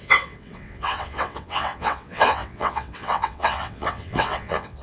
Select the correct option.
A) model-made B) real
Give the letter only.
A